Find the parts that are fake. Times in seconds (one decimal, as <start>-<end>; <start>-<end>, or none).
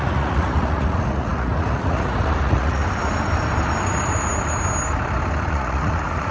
0.0-2.8; 5.5-6.3